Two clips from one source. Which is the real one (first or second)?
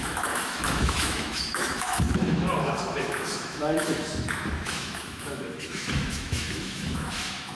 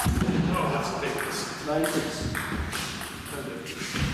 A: second